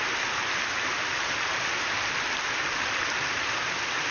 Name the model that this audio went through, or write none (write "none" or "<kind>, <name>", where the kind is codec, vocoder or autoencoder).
none